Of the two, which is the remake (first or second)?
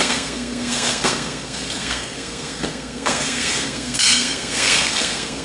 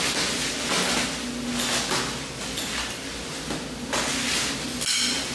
first